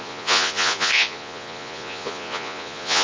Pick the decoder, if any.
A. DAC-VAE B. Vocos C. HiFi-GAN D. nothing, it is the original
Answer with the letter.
B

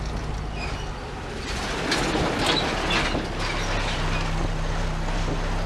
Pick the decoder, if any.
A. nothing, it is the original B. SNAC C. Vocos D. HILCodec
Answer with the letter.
A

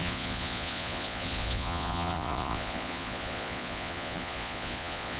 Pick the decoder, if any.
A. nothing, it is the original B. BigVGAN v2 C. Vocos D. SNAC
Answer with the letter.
C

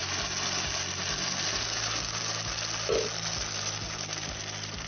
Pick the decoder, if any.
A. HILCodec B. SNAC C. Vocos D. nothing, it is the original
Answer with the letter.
D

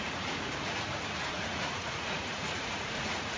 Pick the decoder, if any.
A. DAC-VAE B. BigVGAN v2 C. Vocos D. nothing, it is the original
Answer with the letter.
C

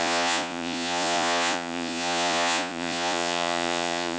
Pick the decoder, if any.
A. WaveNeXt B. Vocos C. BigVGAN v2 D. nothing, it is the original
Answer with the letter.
B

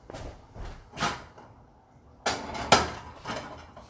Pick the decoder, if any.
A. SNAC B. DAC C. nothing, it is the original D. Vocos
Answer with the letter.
C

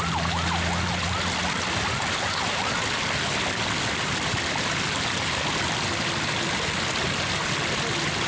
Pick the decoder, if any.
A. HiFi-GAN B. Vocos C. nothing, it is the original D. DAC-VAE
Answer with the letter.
C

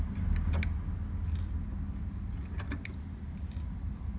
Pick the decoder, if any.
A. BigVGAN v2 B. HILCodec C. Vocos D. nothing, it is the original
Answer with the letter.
D